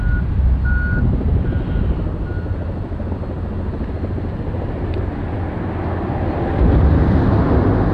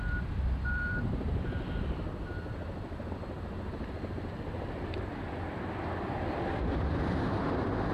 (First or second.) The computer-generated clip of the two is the second